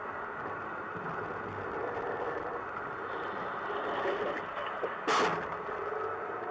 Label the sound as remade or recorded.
recorded